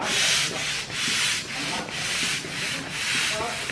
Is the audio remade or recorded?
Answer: recorded